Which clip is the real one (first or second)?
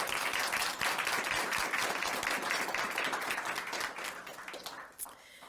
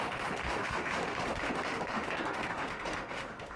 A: first